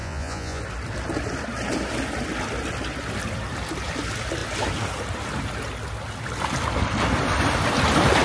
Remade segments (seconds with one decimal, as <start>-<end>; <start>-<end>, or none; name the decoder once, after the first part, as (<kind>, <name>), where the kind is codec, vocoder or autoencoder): 0.0-0.6 (vocoder, Vocos)